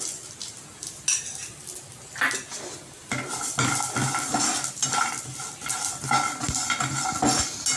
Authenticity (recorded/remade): recorded